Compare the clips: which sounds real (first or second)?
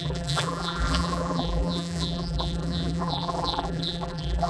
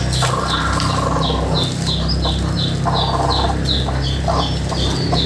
second